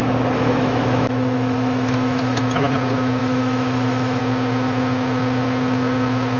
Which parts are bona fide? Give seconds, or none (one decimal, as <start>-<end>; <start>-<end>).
2.4-3.2; 4.2-6.4